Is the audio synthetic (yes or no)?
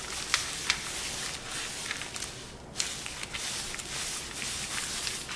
no